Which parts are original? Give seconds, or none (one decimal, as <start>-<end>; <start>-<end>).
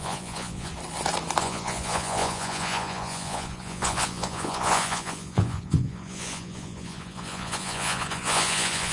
0.7-1.4